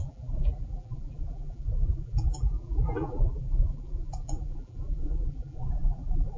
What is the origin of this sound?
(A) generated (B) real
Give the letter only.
A